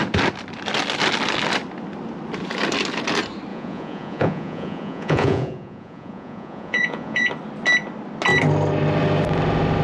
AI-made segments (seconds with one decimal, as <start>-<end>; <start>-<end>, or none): 3.5-7.3